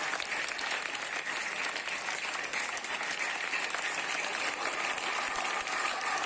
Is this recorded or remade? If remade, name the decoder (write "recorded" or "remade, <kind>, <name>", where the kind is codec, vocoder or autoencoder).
recorded